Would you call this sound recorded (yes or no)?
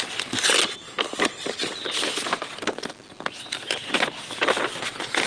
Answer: yes